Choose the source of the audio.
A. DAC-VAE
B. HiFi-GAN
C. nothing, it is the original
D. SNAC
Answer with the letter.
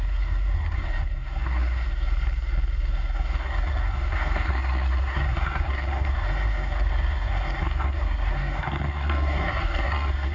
D